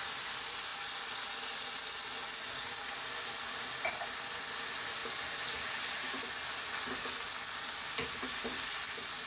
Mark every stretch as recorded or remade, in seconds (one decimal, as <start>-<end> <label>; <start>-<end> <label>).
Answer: 0.0-9.3 recorded